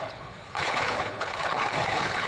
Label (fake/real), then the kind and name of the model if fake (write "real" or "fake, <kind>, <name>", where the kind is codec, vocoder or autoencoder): fake, codec, HILCodec